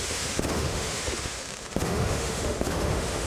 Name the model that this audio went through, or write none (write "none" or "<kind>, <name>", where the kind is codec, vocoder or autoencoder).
autoencoder, DAC-VAE